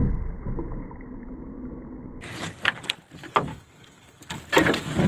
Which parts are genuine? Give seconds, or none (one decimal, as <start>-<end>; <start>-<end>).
0.0-3.5; 4.4-5.1